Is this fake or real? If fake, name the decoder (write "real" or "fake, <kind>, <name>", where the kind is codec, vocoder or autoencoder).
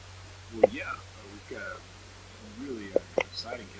real